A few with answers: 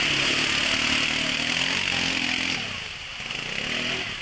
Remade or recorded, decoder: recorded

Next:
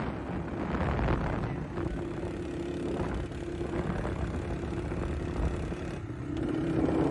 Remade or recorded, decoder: recorded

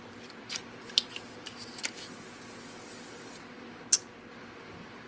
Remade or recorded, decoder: recorded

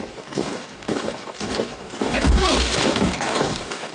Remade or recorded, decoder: remade, codec, DAC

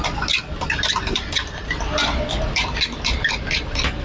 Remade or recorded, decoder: recorded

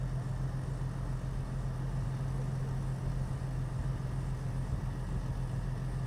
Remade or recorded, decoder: recorded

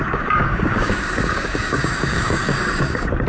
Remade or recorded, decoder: remade, codec, DAC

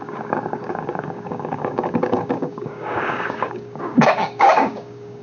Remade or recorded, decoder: remade, codec, DAC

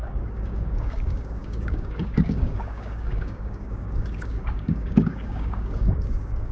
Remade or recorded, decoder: remade, codec, DAC